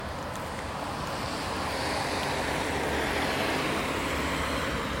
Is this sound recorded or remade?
recorded